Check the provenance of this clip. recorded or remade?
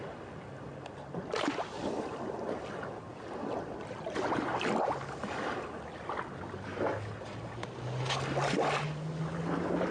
recorded